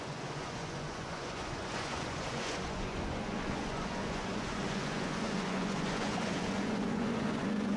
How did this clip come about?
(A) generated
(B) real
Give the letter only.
A